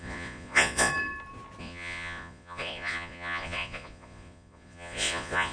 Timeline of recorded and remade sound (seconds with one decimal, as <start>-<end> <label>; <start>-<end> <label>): 0.0-0.9 remade; 0.9-1.6 recorded; 1.6-5.5 remade